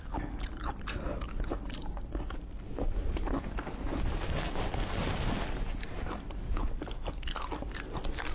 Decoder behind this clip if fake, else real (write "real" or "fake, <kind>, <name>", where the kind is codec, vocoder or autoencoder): real